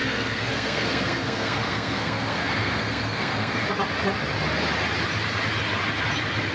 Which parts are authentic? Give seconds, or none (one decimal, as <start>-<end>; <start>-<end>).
3.6-6.5